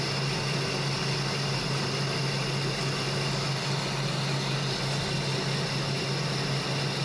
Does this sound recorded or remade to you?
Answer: recorded